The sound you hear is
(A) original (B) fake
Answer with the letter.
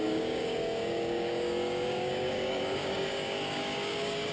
B